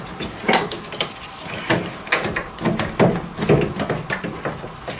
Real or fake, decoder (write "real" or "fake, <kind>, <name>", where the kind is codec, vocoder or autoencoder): real